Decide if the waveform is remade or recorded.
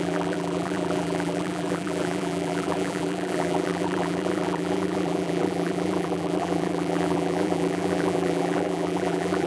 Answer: remade